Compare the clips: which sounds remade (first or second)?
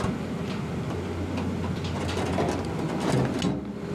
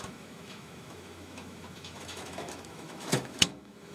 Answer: second